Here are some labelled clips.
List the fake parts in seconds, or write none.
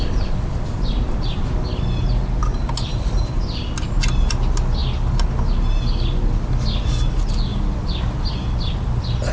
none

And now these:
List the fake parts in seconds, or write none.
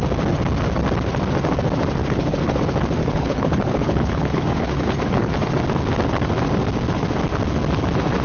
2.0-2.6; 3.0-5.3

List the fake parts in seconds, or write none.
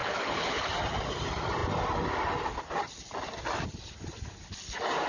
0.0-0.7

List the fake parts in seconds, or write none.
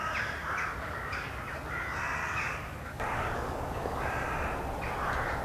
0.4-1.3; 2.2-4.1